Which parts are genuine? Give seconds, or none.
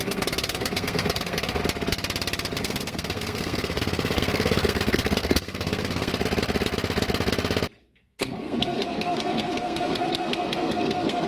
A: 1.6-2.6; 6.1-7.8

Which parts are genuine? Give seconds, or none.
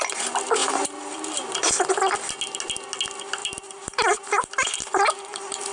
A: 0.0-0.6; 1.9-3.4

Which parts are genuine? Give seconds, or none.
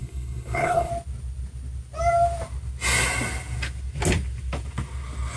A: 0.9-5.4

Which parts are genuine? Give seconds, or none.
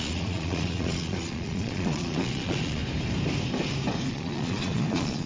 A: 2.8-4.1